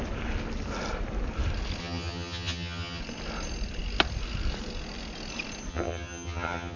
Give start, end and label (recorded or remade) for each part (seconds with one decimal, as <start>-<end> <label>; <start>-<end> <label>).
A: 0.0-1.8 recorded; 1.8-3.0 remade; 3.0-5.7 recorded; 5.7-6.8 remade